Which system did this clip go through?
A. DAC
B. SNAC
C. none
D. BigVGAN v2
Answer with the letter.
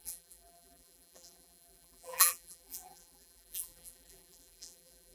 D